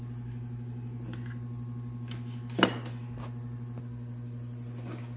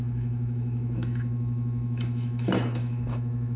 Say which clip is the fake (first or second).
second